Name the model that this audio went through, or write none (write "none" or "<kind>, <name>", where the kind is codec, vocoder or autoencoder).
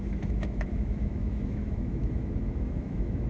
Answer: autoencoder, DAC-VAE